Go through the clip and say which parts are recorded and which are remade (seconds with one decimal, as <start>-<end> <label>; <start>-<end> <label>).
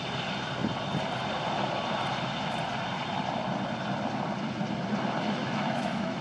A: 0.0-5.4 recorded; 5.4-6.2 remade